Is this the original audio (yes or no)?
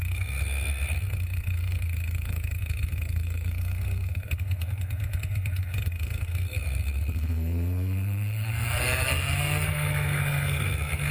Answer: no